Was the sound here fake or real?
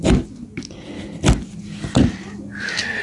real